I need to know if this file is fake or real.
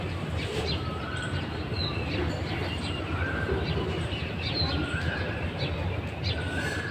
fake